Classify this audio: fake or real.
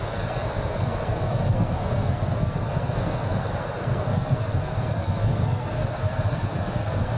fake